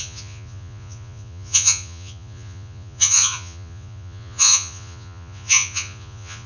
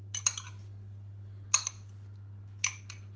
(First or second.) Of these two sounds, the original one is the second